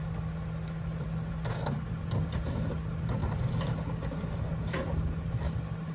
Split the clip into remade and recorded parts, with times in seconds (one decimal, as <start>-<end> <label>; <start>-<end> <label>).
0.0-5.9 recorded